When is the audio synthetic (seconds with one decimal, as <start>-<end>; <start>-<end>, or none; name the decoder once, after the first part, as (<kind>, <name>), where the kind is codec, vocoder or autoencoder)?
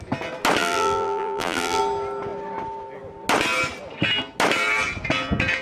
0.6-1.8 (vocoder, BigVGAN v2)